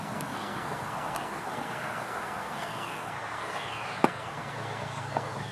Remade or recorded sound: remade